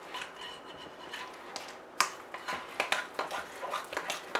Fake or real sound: real